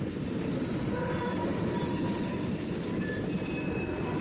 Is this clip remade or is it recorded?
remade